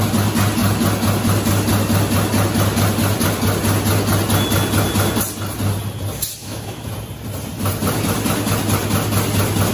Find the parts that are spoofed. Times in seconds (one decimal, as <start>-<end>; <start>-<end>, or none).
6.4-6.9